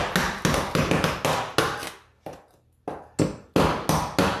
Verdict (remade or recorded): recorded